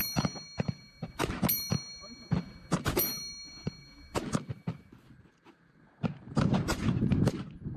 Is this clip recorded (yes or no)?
yes